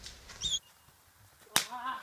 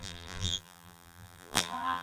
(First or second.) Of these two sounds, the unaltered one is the first